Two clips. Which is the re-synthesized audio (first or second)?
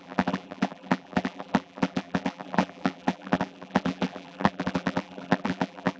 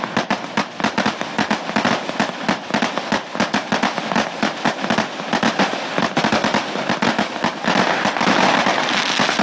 first